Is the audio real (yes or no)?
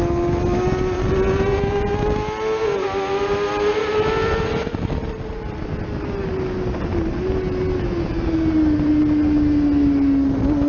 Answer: yes